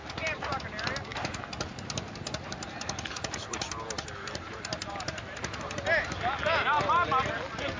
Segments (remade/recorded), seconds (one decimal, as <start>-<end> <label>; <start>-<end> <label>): 0.0-0.6 remade; 0.6-1.1 recorded; 1.1-5.8 remade; 5.8-7.8 recorded